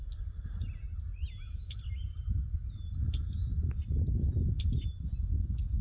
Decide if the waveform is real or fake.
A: real